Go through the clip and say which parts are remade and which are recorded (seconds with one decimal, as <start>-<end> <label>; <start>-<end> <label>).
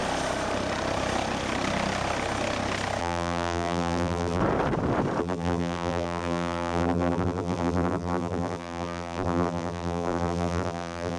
0.0-3.0 recorded; 3.0-4.4 remade; 4.4-5.2 recorded; 5.2-11.2 remade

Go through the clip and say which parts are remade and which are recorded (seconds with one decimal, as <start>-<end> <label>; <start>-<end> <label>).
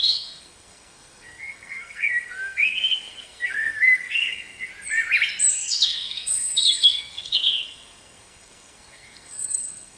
0.0-4.7 remade; 4.7-5.5 recorded; 5.5-10.0 remade